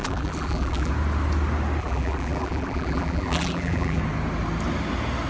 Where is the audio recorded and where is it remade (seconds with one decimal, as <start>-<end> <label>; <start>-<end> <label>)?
0.0-0.9 remade; 0.9-1.8 recorded; 1.8-4.0 remade; 4.0-5.3 recorded